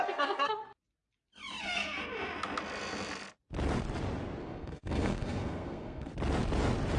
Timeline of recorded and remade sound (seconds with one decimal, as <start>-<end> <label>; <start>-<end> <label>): 0.0-0.6 remade; 0.6-1.6 recorded; 1.6-2.0 remade; 2.0-4.4 recorded; 4.4-6.1 remade; 6.1-7.0 recorded

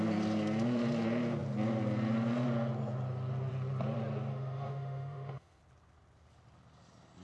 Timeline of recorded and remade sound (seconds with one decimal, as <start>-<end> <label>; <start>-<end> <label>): 0.0-4.3 recorded; 4.3-5.6 remade; 5.6-7.2 recorded

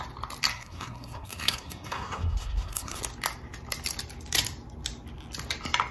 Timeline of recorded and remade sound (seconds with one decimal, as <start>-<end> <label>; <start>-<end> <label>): 0.0-0.5 recorded; 0.5-3.0 remade; 3.0-5.9 recorded

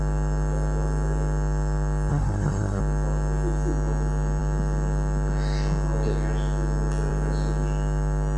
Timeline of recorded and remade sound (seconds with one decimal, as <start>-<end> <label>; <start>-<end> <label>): 0.0-2.1 recorded; 2.1-2.8 remade; 2.8-8.4 recorded

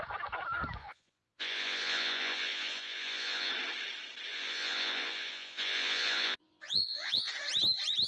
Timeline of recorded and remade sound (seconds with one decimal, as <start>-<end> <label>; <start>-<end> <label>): 0.0-0.8 recorded; 0.8-3.5 remade; 3.5-4.3 recorded; 4.3-7.3 remade; 7.3-8.1 recorded

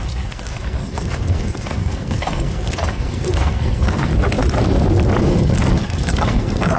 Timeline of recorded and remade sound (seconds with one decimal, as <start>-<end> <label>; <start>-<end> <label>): 0.0-4.1 remade; 4.1-5.2 recorded; 5.2-6.8 remade

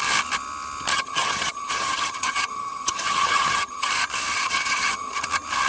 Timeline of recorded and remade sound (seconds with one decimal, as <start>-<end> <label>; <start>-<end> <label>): 0.0-0.9 recorded; 0.9-3.9 remade; 3.9-4.3 recorded; 4.3-5.2 remade; 5.2-5.7 recorded

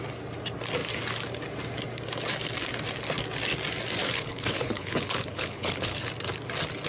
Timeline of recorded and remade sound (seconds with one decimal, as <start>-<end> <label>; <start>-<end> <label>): 0.0-4.0 recorded; 4.0-6.1 remade; 6.1-6.9 recorded